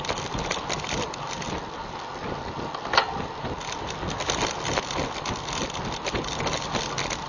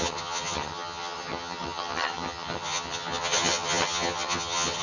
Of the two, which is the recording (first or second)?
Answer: first